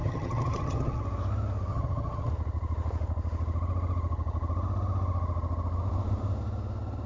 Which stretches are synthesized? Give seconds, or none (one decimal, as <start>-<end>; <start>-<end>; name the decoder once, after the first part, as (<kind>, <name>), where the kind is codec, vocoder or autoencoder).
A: 0.0-1.0 (vocoder, HiFi-GAN); 1.7-2.3